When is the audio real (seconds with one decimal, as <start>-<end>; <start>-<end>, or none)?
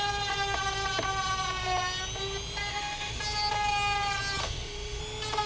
0.0-2.7; 3.2-4.4; 5.0-5.5